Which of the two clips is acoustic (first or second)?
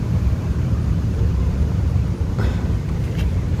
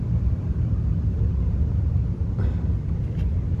second